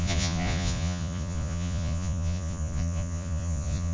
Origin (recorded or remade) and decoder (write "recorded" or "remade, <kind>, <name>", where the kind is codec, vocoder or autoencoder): remade, vocoder, Vocos